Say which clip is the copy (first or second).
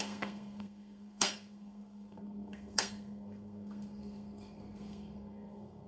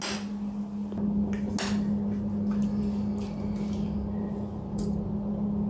first